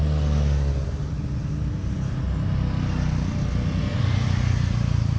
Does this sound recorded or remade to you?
recorded